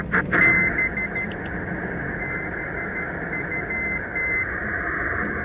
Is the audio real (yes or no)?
yes